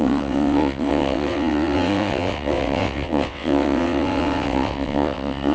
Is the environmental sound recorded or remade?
remade